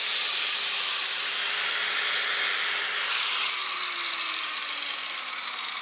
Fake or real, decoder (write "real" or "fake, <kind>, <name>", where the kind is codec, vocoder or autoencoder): real